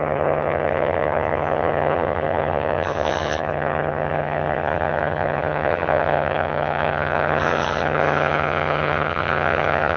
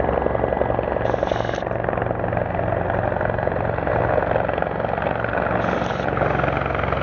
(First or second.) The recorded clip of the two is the second